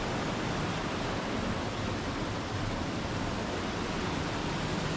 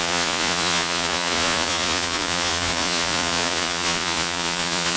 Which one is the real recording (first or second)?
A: first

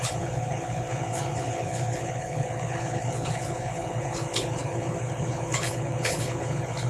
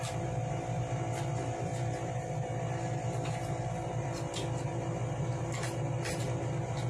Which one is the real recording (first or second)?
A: second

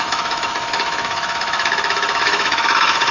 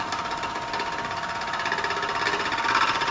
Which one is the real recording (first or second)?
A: second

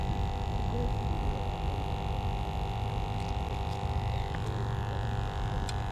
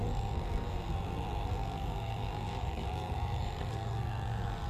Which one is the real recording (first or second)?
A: first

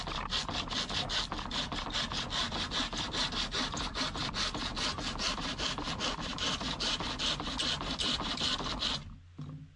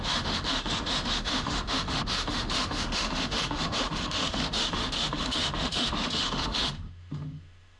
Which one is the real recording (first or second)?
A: first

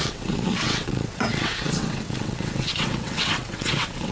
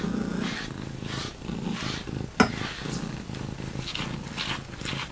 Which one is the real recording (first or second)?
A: second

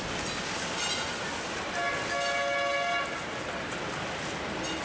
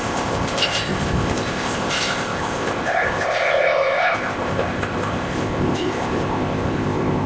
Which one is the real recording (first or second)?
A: first